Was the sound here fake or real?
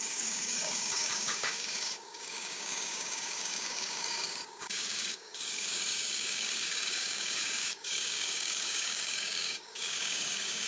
fake